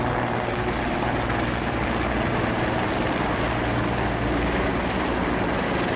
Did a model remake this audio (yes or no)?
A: no